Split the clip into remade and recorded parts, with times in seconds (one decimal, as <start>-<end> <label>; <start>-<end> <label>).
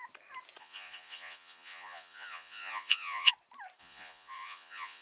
0.0-0.6 recorded; 0.6-3.3 remade; 3.3-3.8 recorded; 3.8-5.0 remade